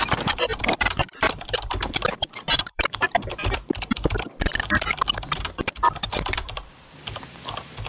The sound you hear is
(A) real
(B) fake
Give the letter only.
B